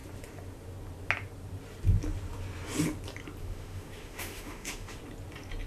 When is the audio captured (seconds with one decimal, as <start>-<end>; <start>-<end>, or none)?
0.0-3.4; 5.0-5.7